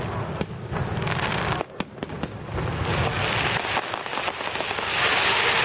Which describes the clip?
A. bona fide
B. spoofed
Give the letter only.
A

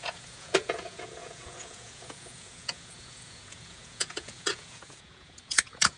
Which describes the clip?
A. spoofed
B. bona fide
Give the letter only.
A